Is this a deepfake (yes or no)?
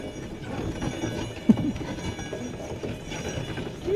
no